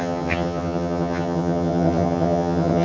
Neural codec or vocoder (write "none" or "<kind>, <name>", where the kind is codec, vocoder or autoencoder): vocoder, HiFi-GAN